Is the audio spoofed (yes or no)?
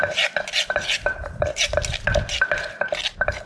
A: no